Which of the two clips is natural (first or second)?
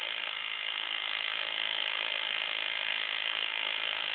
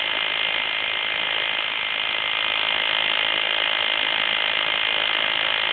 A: second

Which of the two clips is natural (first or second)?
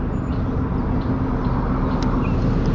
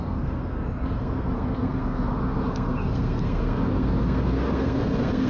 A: first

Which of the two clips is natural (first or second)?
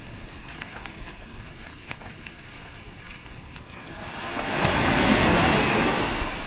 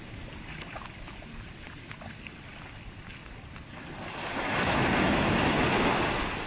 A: second